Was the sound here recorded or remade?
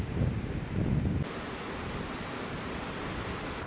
recorded